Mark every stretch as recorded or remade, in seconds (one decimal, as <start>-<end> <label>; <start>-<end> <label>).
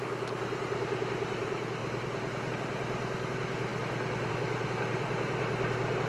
0.0-6.1 recorded